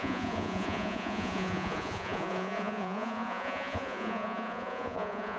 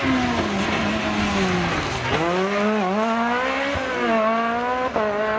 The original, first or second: second